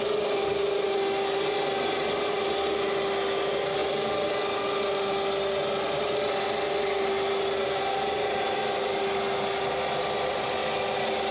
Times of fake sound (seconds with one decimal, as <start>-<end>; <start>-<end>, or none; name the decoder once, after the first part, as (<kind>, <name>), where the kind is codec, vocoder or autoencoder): none